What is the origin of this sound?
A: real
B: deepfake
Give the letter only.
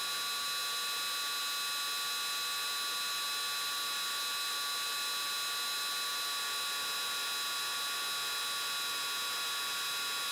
A